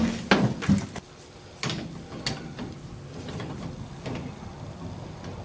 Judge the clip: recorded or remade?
recorded